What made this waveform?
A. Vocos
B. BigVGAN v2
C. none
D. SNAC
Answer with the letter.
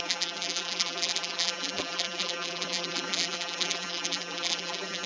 B